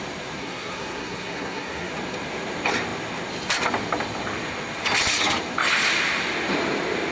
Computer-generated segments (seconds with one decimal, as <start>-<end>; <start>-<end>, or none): 0.4-1.9